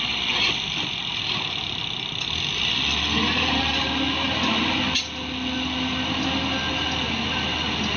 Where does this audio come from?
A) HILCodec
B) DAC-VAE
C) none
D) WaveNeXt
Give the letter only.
C